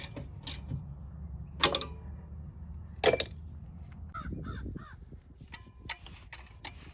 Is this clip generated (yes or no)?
no